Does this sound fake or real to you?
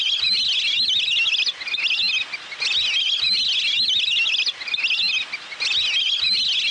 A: real